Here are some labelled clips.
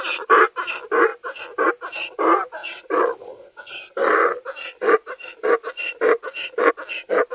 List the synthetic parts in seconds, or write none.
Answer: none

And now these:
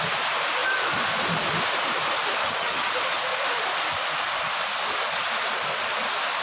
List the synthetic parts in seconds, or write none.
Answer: 2.4-2.9 (vocoder, HiFi-GAN)

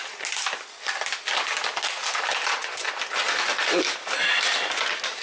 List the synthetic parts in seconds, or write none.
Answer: none

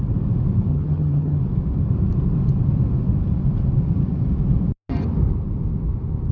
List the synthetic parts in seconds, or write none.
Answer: 0.7-1.4 (vocoder, HiFi-GAN)

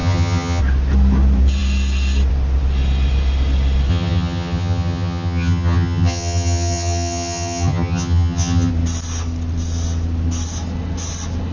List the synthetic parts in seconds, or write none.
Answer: 0.0-0.6 (vocoder, HiFi-GAN); 3.9-8.7